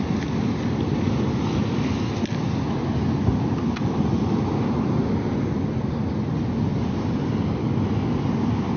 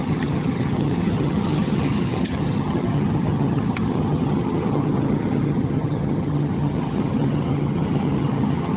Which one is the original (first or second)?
first